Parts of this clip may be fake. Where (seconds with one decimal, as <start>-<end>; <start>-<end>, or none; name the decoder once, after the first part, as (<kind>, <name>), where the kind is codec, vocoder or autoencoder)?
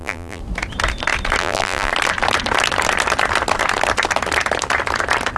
0.0-0.4 (vocoder, BigVGAN v2); 1.4-1.9